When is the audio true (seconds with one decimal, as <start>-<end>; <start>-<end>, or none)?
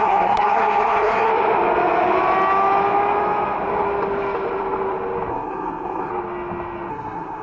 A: 1.3-5.3; 6.1-6.9